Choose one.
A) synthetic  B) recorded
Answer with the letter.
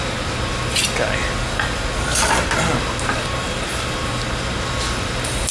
B